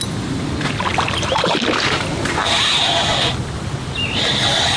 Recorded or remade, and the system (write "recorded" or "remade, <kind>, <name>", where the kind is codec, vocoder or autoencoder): recorded